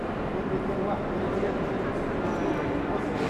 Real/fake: real